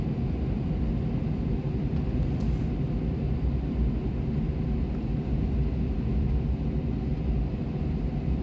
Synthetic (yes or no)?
no